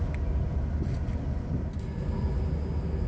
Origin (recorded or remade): recorded